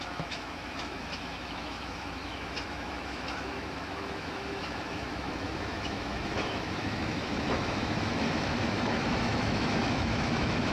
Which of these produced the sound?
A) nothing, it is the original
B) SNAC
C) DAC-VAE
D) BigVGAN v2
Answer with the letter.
C